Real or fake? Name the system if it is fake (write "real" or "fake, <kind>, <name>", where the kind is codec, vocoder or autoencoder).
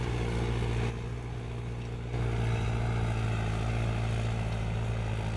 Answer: real